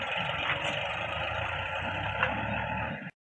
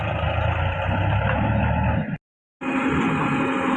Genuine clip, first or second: second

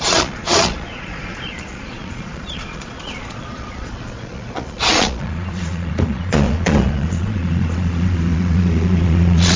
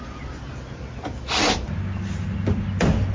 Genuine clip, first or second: second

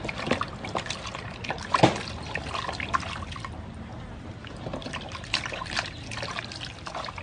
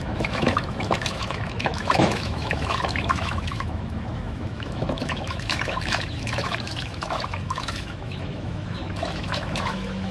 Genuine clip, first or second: first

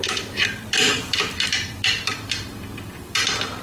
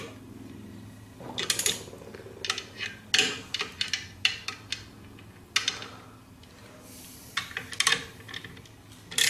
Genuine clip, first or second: second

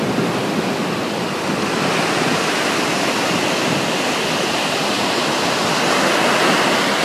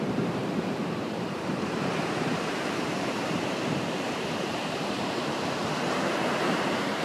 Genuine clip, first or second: first